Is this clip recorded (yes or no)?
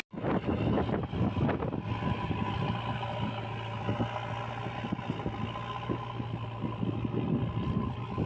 yes